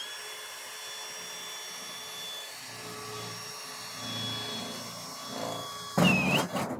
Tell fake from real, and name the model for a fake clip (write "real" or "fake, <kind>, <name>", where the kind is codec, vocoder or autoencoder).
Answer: real